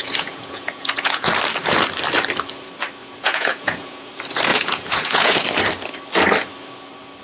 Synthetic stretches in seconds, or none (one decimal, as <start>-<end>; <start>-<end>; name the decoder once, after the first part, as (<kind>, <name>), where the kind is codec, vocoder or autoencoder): 0.0-1.3 (vocoder, Vocos); 3.0-4.1; 4.5-5.3